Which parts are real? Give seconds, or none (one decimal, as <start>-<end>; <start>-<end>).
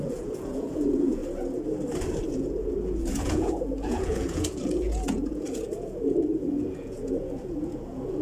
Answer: 1.2-2.3